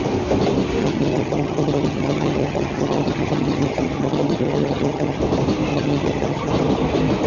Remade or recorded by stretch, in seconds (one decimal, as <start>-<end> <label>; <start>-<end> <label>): 0.0-0.8 recorded; 0.8-5.2 remade; 5.2-5.7 recorded; 5.7-6.5 remade; 6.5-7.3 recorded